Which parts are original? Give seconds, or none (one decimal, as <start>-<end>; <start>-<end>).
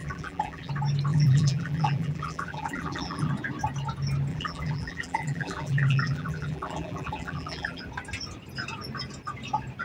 0.7-1.1; 3.3-4.3; 7.8-9.8